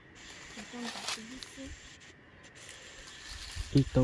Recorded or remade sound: recorded